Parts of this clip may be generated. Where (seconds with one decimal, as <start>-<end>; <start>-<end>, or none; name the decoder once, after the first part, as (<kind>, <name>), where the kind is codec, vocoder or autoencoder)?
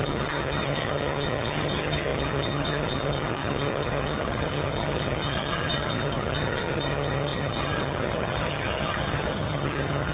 0.0-10.1 (vocoder, HiFi-GAN)